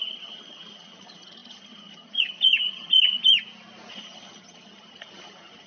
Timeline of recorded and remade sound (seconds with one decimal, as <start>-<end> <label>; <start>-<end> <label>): 0.0-3.2 remade; 3.2-3.9 recorded; 3.9-5.7 remade